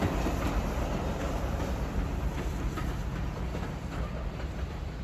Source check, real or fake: real